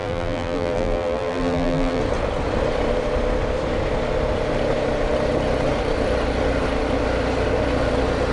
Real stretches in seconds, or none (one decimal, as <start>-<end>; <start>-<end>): 2.0-8.3